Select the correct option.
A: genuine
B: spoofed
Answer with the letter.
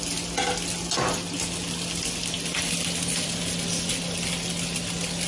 A